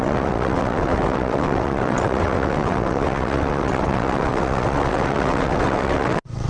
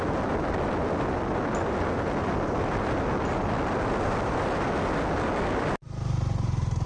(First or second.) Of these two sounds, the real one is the second